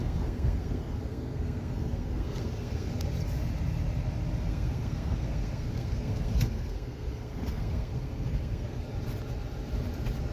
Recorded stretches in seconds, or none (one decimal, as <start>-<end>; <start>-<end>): 2.9-4.5; 8.8-10.3

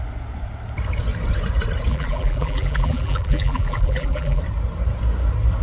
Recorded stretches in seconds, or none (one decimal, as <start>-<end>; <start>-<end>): 0.0-1.9; 4.4-5.6

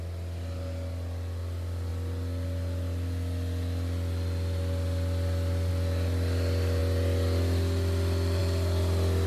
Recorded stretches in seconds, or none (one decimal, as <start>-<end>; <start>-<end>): 0.0-9.3

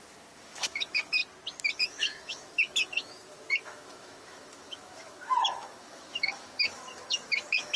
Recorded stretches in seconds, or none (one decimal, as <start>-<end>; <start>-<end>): 1.2-1.8

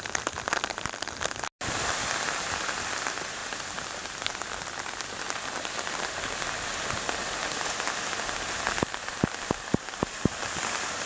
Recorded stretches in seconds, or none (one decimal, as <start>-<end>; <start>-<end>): 0.0-11.1